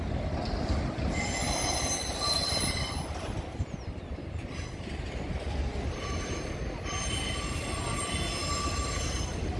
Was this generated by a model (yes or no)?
no